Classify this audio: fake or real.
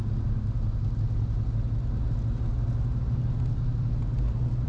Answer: real